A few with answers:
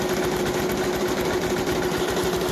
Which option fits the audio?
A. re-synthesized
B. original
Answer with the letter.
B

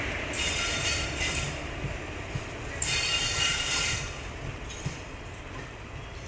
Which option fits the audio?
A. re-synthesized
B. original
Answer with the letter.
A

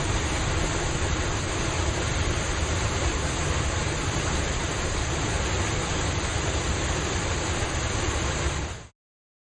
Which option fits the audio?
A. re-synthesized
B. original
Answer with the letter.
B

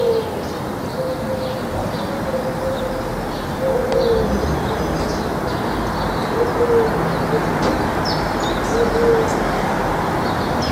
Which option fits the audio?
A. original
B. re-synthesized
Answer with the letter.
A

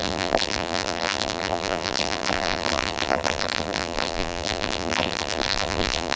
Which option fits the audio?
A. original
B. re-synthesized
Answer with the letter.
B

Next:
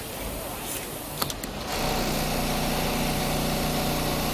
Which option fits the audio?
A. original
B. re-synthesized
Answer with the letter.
A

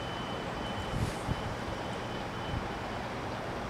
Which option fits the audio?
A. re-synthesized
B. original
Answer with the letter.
A